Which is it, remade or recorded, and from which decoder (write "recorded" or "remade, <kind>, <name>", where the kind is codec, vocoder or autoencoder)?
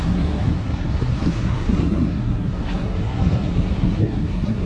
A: remade, codec, SNAC